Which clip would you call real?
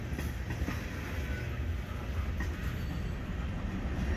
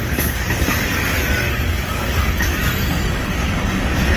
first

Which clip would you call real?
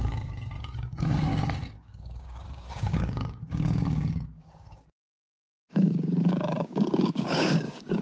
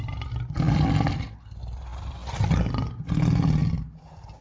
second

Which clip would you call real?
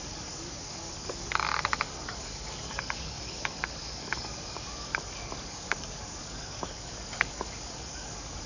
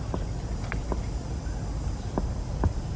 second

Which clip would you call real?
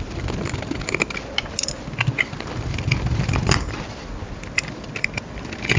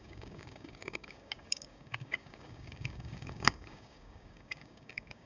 first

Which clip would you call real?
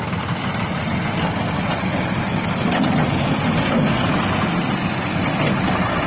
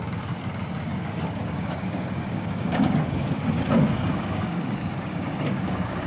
first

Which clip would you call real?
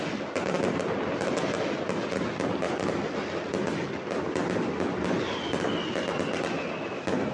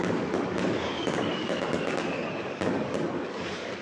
first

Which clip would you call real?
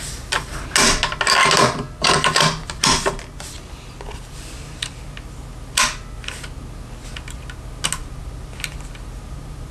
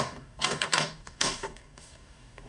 first